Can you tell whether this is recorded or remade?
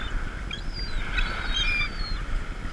recorded